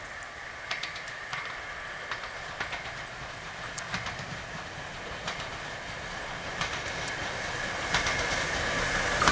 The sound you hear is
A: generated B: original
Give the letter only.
B